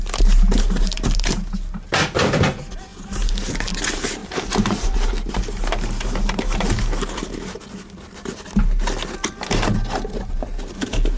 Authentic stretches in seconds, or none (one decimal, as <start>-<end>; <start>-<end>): 0.0-4.2; 5.3-11.2